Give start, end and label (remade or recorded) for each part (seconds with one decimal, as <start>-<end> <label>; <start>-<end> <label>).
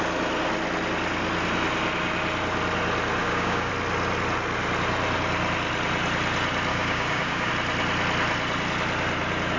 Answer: 0.0-3.2 recorded; 3.2-3.7 remade; 3.7-6.7 recorded; 6.7-7.5 remade; 7.5-9.6 recorded